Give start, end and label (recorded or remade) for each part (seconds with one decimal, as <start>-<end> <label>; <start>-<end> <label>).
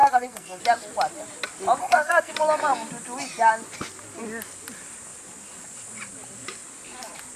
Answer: 0.0-0.6 remade; 0.6-1.8 recorded; 1.8-2.3 remade; 2.3-7.4 recorded